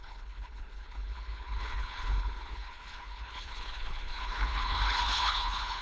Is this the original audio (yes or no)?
no